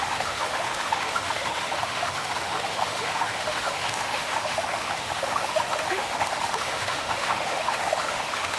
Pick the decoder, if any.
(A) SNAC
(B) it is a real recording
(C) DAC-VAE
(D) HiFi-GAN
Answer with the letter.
C